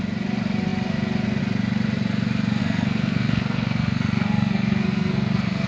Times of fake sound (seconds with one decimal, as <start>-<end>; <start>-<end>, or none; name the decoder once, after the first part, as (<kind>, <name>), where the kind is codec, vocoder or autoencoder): 2.6-5.7 (codec, SNAC)